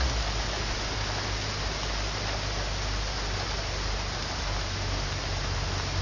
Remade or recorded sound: recorded